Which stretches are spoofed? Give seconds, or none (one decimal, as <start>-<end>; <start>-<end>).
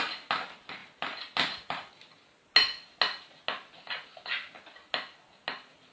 none